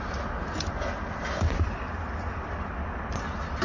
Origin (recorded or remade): recorded